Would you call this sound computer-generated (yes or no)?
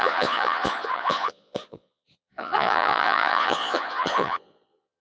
yes